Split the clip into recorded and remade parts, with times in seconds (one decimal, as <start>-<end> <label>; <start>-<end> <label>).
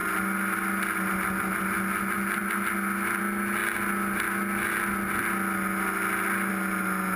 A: 0.0-7.2 recorded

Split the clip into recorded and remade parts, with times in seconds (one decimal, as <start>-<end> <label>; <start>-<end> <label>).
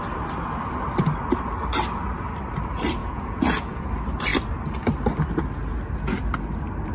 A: 0.0-3.0 recorded; 3.0-3.9 remade; 3.9-6.9 recorded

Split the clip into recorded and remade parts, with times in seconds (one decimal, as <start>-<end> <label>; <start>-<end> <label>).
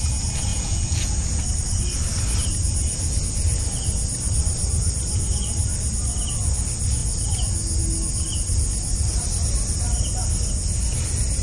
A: 0.0-0.5 recorded; 0.5-1.4 remade; 1.4-11.4 recorded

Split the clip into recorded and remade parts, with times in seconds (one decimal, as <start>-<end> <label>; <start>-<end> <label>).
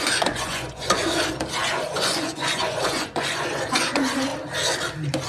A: 0.0-1.0 remade; 1.0-1.7 recorded; 1.7-4.3 remade; 4.3-5.3 recorded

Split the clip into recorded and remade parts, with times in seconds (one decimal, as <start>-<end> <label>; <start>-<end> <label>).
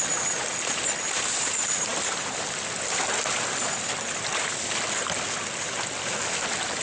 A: 0.0-6.8 recorded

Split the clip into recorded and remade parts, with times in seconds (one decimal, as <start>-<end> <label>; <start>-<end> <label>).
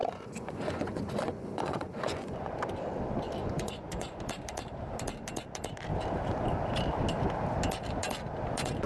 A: 0.0-2.5 remade; 2.5-3.4 recorded; 3.4-4.2 remade; 4.2-8.9 recorded